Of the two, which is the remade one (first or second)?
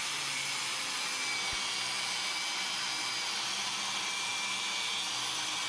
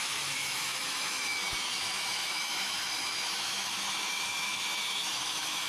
second